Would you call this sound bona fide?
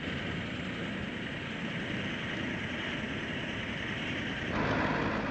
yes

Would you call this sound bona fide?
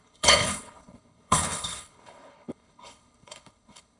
no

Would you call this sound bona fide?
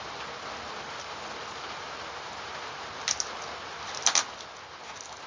yes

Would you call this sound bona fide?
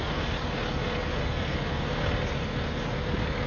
yes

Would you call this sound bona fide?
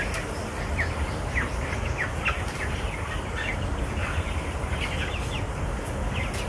yes